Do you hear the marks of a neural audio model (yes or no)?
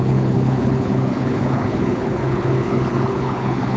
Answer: yes